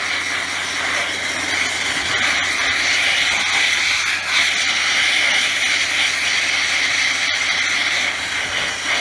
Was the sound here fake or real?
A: real